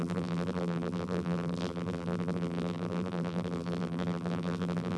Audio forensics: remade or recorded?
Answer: remade